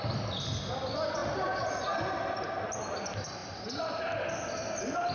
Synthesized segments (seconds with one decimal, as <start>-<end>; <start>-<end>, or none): none